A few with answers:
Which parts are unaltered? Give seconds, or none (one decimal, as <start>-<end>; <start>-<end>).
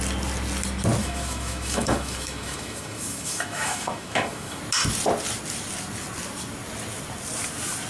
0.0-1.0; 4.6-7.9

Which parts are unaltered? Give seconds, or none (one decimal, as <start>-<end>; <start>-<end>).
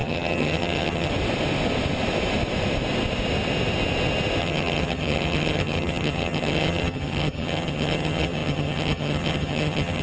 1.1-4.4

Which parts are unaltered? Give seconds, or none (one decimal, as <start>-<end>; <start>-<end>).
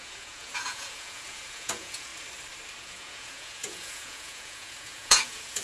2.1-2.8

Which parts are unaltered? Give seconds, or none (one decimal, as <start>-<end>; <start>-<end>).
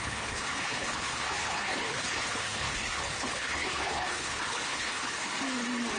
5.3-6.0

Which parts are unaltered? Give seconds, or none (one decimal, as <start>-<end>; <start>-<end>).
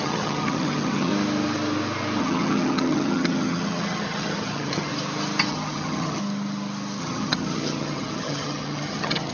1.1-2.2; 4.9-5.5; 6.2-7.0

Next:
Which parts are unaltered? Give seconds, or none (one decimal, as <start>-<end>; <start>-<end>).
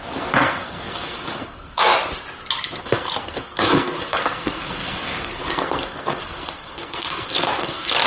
1.9-2.8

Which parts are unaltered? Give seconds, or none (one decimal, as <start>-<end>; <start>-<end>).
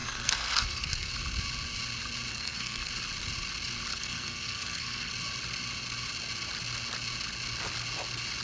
1.1-2.3; 2.9-3.9; 5.1-8.4